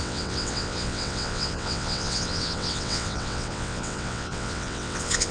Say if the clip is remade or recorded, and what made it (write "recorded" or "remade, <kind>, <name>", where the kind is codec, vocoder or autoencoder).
remade, vocoder, WaveNeXt